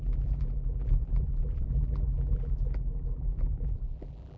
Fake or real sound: fake